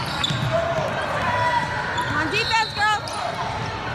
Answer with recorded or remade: recorded